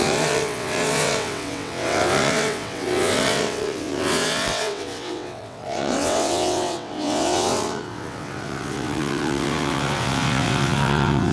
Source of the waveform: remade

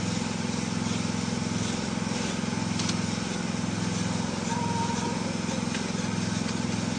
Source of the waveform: recorded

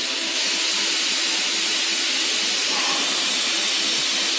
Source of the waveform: recorded